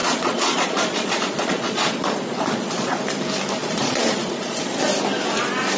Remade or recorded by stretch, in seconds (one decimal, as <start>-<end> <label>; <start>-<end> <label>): 0.0-3.0 remade; 3.0-3.6 recorded; 3.6-4.8 remade; 4.8-5.8 recorded